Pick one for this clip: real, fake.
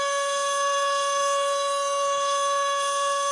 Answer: fake